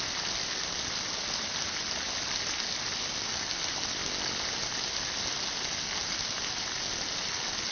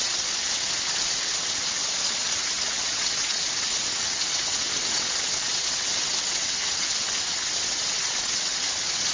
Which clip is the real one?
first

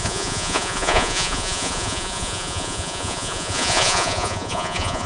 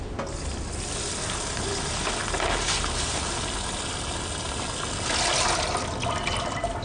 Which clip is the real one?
second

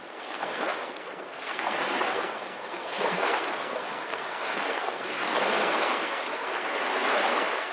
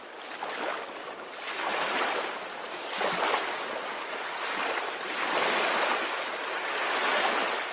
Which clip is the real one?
second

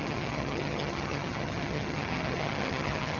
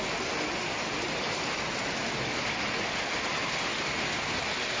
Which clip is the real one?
second